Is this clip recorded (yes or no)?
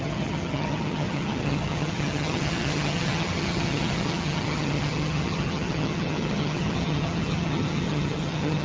no